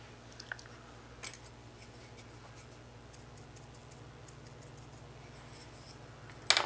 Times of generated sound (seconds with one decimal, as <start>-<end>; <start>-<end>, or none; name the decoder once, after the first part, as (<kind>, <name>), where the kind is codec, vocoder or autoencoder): none

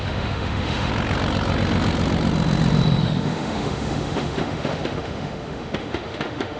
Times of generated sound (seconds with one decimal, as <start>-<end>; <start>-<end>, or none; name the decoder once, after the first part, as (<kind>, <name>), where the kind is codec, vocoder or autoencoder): 0.0-0.9 (autoencoder, DAC-VAE); 3.0-6.6

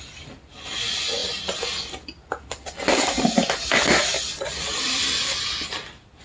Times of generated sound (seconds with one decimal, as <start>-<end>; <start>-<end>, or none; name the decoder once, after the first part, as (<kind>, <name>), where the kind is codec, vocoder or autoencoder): none

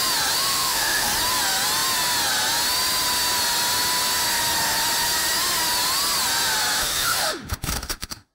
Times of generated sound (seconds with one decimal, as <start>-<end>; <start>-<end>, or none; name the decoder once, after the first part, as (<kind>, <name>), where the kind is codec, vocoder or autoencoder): 0.5-1.1 (autoencoder, DAC-VAE); 6.8-8.3